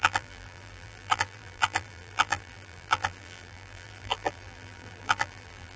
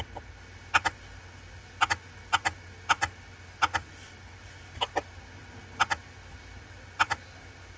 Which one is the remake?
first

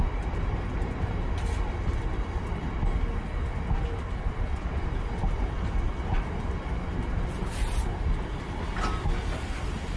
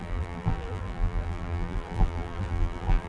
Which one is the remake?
second